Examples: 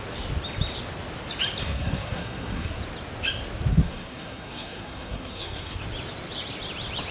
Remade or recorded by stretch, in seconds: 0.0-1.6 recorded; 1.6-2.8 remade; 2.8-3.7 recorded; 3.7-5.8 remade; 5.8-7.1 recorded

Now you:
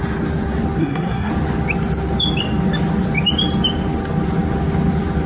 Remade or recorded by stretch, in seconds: 0.0-0.8 recorded; 0.8-1.3 remade; 1.3-5.3 recorded

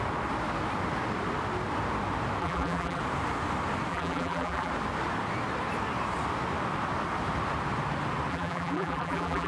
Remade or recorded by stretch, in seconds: 0.0-2.4 recorded; 2.4-3.0 remade; 3.0-3.9 recorded; 3.9-4.7 remade; 4.7-8.3 recorded; 8.3-9.5 remade

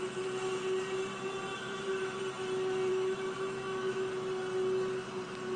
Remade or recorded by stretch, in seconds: 0.0-1.5 recorded; 1.5-2.2 remade; 2.2-2.9 recorded; 2.9-4.1 remade; 4.1-5.6 recorded

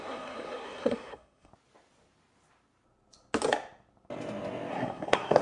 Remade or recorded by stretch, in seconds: 0.0-1.5 remade; 1.5-4.7 recorded; 4.7-5.4 remade

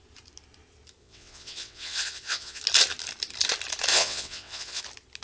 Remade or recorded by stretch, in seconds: 0.0-1.0 recorded; 1.0-2.6 remade; 2.6-3.9 recorded; 3.9-4.8 remade; 4.8-5.2 recorded